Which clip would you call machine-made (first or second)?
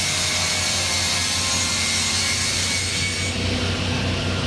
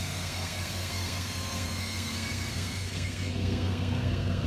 second